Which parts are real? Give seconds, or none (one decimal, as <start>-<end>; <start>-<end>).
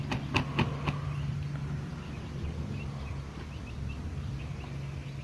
0.0-5.2